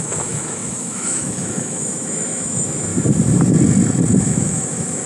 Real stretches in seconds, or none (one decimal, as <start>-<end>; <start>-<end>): 2.9-4.2